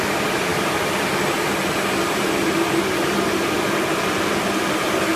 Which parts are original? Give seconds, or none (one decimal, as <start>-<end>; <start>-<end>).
0.0-5.2